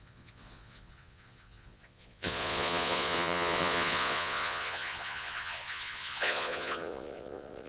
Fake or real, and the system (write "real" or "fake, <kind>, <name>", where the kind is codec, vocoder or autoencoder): fake, vocoder, Vocos